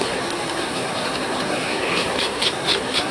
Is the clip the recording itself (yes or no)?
no